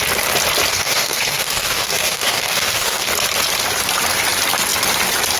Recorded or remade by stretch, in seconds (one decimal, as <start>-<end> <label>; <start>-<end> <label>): 0.0-0.7 recorded; 0.7-3.1 remade; 3.1-5.4 recorded